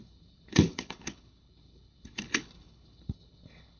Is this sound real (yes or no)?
no